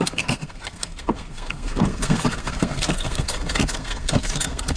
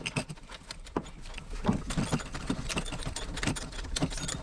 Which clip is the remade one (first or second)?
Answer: first